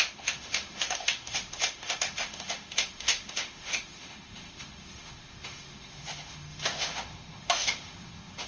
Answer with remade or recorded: remade